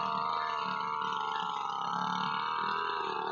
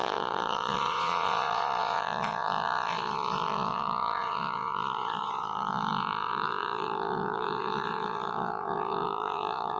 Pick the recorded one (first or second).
first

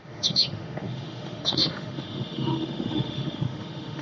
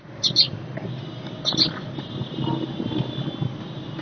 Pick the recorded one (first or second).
second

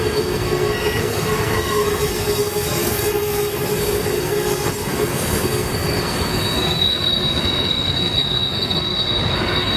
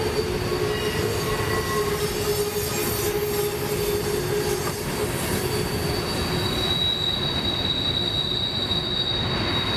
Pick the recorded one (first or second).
second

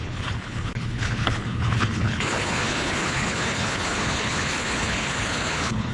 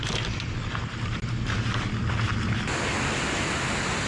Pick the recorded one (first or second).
second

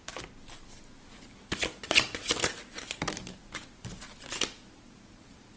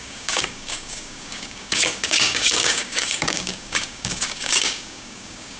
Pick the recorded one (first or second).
first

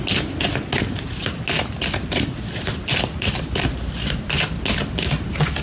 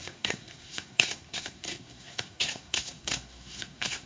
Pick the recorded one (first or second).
first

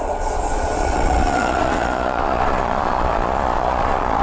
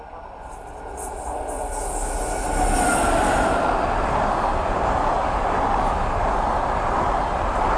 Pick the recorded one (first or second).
second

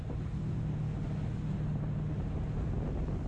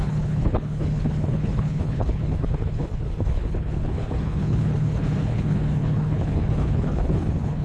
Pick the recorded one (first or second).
first